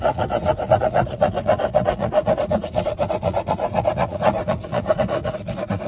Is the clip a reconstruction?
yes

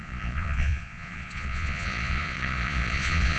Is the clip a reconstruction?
yes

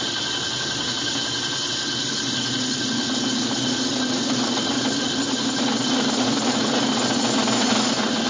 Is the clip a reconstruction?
no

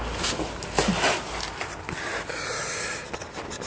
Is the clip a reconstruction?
no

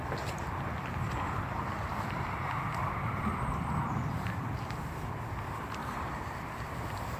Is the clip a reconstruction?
no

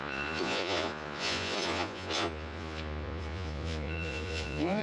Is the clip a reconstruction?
yes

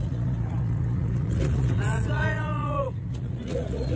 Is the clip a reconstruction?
yes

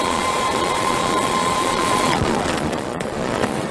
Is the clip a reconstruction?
yes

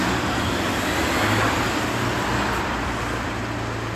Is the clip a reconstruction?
no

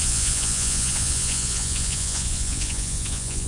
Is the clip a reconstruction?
yes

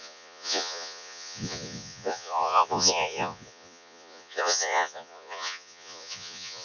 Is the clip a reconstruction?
yes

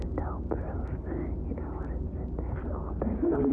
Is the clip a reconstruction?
no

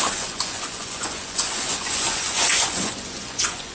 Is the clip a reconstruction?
yes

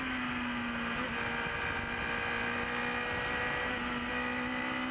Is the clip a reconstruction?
no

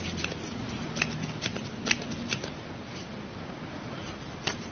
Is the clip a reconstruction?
no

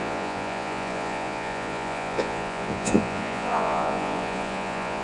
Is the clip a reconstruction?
yes